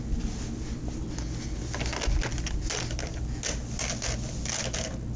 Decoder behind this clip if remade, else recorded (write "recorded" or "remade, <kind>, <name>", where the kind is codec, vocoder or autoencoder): recorded